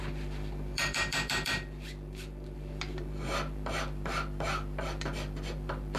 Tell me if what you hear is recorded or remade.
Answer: remade